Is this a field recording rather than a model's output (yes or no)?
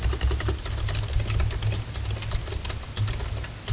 yes